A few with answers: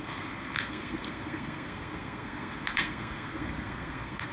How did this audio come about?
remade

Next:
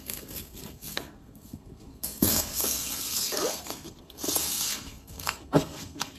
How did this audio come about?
remade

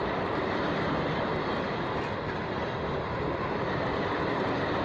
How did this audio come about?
recorded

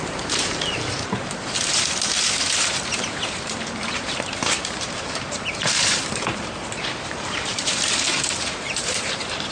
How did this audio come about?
remade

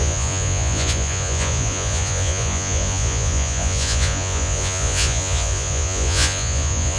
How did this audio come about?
remade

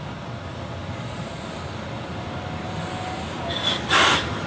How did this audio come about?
recorded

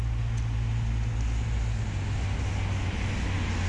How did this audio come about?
recorded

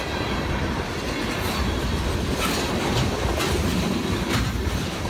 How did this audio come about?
recorded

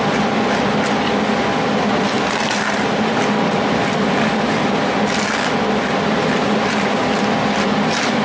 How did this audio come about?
recorded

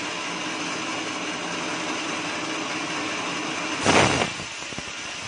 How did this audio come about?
recorded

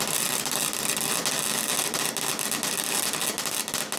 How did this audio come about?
recorded